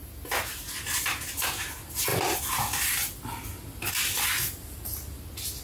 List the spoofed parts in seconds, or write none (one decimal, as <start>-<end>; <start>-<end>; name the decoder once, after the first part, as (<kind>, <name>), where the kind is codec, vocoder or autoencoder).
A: none